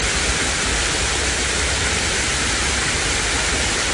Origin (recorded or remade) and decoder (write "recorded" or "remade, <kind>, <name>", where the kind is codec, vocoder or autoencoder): recorded